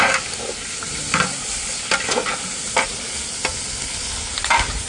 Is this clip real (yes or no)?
yes